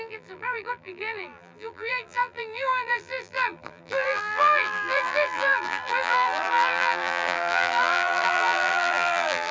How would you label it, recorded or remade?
remade